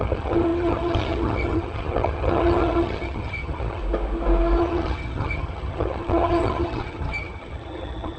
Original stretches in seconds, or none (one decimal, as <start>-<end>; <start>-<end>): 3.8-4.6